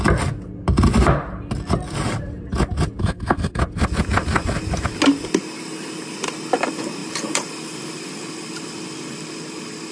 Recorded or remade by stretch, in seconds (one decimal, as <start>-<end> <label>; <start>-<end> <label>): 0.0-3.0 recorded; 3.0-3.6 remade; 3.6-9.9 recorded